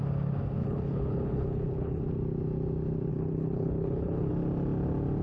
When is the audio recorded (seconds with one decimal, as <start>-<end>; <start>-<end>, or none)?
0.0-0.6; 2.0-3.1; 4.3-5.2